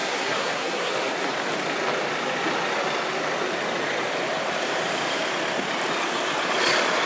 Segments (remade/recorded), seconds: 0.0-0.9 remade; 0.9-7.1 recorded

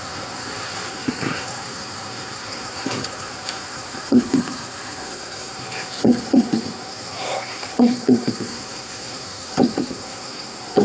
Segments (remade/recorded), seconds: 0.0-10.8 remade

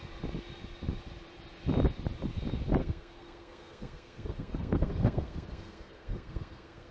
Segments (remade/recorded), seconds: 0.0-2.8 recorded; 2.8-6.9 remade

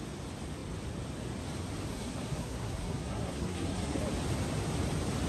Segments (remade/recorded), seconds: 0.0-1.9 recorded; 1.9-4.0 remade; 4.0-5.3 recorded